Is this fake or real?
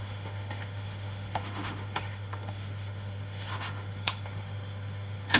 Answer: fake